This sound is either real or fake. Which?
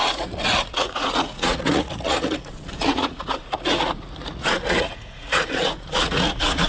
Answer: fake